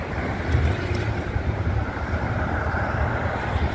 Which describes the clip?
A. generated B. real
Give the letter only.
B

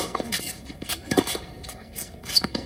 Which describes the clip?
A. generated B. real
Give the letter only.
A